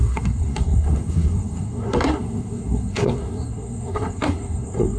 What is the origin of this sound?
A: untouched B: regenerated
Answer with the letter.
B